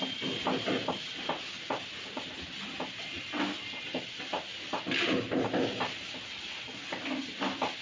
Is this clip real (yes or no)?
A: yes